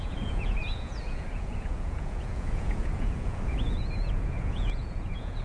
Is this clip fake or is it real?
fake